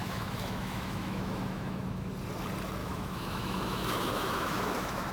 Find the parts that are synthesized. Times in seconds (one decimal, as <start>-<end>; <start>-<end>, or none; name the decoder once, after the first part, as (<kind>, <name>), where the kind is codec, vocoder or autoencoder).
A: 0.0-2.1 (autoencoder, DAC-VAE); 2.8-5.1